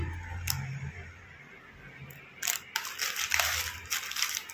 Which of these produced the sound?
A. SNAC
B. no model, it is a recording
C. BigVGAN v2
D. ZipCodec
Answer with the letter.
B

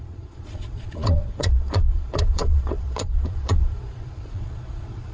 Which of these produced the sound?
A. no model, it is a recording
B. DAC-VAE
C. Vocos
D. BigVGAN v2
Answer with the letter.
C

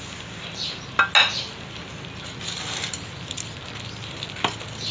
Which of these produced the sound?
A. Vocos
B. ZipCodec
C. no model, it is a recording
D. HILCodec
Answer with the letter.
C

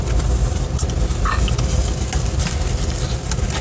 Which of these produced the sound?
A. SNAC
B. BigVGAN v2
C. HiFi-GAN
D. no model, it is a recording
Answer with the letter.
D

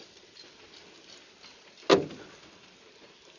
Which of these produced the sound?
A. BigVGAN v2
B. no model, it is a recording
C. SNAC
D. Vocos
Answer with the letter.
B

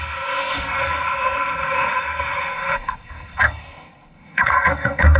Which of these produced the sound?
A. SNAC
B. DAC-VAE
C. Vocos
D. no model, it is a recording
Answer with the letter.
A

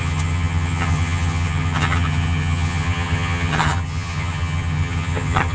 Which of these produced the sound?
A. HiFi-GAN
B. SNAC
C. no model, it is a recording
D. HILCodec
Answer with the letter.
A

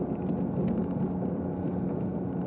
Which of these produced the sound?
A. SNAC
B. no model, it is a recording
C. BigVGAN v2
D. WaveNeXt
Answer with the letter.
B